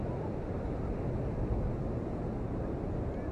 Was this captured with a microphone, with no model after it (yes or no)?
yes